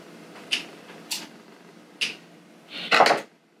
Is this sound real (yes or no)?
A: yes